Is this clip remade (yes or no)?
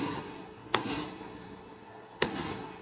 yes